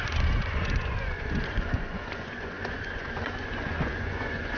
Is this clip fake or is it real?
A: fake